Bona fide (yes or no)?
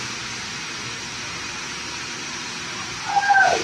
no